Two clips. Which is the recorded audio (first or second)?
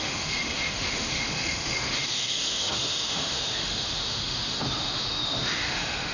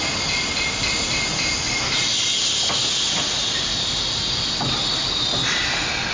second